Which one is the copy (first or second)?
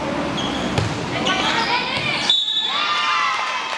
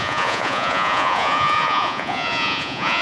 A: second